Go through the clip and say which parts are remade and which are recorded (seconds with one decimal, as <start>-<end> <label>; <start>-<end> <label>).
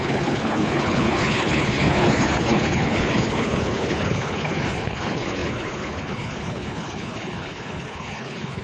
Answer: 0.0-8.6 remade